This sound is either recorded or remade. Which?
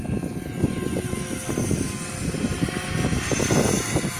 recorded